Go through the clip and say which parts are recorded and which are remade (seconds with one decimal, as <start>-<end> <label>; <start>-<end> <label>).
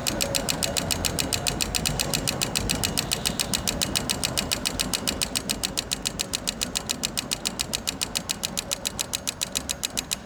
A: 0.0-10.3 recorded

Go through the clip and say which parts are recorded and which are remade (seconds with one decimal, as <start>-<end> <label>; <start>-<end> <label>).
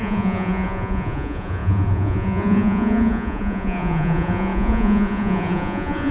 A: 0.0-6.1 remade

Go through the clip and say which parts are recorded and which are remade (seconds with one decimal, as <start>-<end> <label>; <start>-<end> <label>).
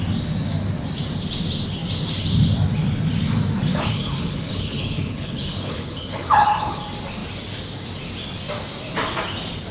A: 0.0-3.7 recorded; 3.7-6.8 remade; 6.8-9.7 recorded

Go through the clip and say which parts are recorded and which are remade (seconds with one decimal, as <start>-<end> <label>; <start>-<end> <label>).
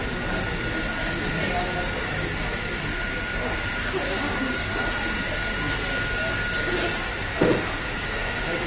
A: 0.0-3.8 recorded; 3.8-4.7 remade; 4.7-5.9 recorded; 5.9-6.8 remade; 6.8-7.7 recorded; 7.7-8.7 remade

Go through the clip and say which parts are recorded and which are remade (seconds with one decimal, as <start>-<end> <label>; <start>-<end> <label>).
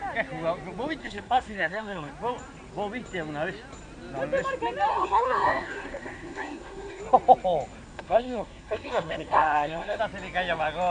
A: 0.0-1.0 recorded; 1.0-2.1 remade; 2.1-4.9 recorded; 4.9-7.0 remade; 7.0-7.9 recorded; 7.9-10.0 remade; 10.0-10.9 recorded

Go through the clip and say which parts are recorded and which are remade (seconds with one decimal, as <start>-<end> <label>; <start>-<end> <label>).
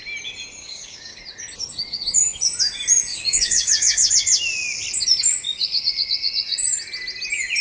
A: 0.0-0.6 recorded; 0.6-1.2 remade; 1.2-3.1 recorded; 3.1-4.1 remade; 4.1-7.6 recorded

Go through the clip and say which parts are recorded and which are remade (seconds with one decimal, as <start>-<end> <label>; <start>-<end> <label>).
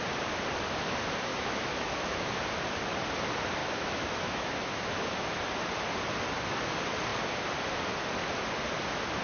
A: 0.0-1.3 recorded; 1.3-2.3 remade; 2.3-3.6 recorded; 3.6-5.4 remade; 5.4-9.2 recorded